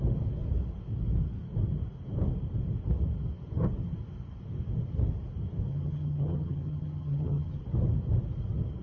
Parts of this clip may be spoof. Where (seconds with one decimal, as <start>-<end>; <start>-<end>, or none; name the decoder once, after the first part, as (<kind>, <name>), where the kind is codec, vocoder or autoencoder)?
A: 5.7-7.6 (vocoder, HiFi-GAN)

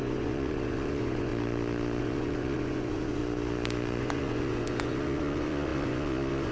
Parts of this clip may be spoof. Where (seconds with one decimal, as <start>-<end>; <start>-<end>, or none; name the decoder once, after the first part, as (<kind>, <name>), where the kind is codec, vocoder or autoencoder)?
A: 0.0-1.3 (vocoder, Vocos); 2.0-3.2; 4.0-6.5

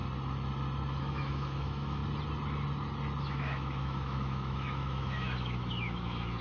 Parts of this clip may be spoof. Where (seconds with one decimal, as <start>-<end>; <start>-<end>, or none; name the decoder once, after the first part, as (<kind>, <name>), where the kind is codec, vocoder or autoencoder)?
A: 1.0-2.0 (autoencoder, DAC-VAE); 3.2-6.4

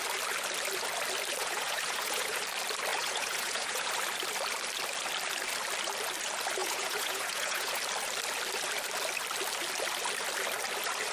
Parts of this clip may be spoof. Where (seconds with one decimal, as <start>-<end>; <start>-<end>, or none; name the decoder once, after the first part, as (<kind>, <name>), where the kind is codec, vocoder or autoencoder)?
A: 1.4-2.4 (vocoder, Vocos); 2.9-3.9; 6.6-7.8

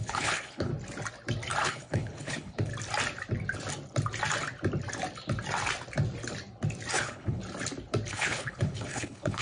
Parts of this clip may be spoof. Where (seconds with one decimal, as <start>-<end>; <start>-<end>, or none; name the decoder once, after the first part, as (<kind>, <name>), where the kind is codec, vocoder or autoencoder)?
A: 0.0-0.7 (codec, HILCodec); 1.6-2.7; 6.9-7.4; 8.1-9.4